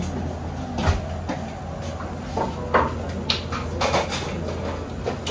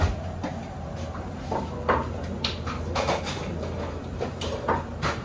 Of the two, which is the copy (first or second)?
second